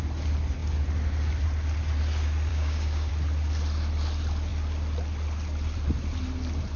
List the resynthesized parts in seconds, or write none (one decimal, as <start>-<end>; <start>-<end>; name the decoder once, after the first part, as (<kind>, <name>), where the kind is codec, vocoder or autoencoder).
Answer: 2.5-3.1 (codec, DAC)